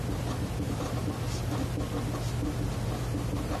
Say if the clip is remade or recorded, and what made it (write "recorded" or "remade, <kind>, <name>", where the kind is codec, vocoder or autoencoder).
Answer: recorded